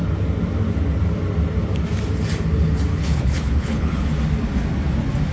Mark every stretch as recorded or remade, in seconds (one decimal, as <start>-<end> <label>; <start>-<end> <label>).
0.0-2.9 recorded; 2.9-4.1 remade; 4.1-5.3 recorded